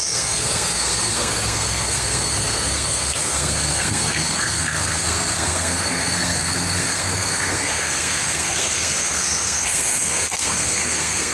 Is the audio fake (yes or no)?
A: yes